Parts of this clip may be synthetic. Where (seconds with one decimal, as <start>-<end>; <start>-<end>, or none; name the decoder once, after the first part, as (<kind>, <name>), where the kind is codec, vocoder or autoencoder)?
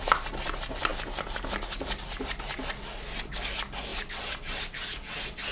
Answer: none